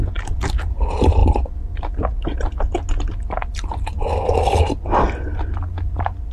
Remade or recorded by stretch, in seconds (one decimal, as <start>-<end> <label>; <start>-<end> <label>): 0.0-6.3 recorded